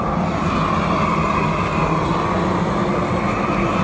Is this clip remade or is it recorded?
recorded